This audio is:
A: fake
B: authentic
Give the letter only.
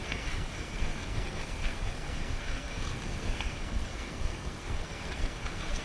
A